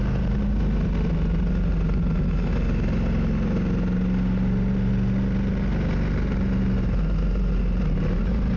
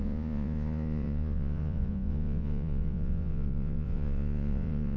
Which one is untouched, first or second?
first